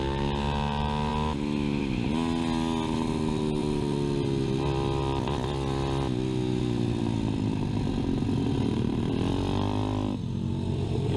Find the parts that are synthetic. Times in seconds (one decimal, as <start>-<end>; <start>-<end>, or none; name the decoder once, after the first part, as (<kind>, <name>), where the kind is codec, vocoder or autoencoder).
none